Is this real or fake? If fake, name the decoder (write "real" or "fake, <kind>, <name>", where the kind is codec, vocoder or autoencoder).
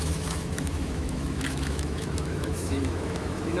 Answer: fake, autoencoder, DAC-VAE